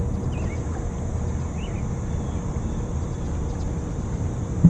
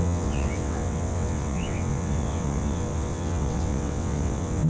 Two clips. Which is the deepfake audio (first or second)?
second